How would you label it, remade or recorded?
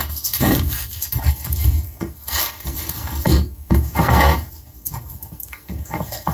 remade